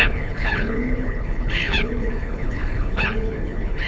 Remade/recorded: remade